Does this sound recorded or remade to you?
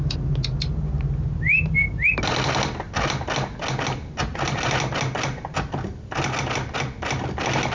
recorded